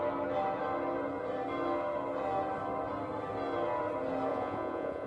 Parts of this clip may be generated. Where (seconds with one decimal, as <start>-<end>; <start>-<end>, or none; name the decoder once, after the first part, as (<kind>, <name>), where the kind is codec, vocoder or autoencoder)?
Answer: 4.3-5.1 (vocoder, Vocos)